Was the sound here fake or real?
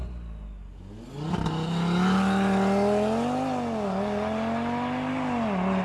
real